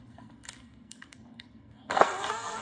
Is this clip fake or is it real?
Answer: fake